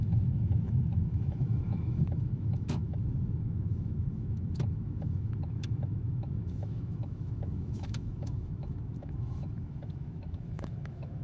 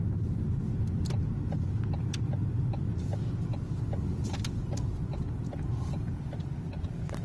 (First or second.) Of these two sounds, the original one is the second